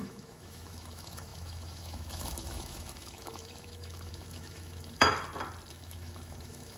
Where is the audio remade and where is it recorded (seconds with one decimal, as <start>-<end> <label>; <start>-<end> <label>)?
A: 0.0-5.1 remade; 5.1-5.7 recorded; 5.7-6.8 remade